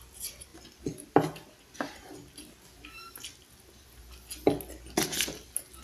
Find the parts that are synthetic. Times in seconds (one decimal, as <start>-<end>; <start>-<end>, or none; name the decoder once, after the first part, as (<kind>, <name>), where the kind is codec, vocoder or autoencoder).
none